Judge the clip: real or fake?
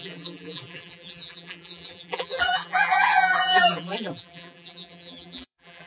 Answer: fake